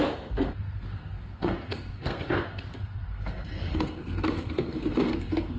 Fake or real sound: fake